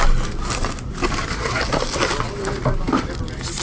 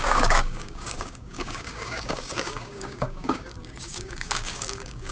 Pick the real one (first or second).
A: first